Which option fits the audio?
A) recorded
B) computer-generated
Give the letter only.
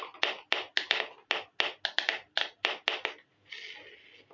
A